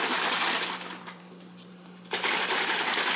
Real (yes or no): no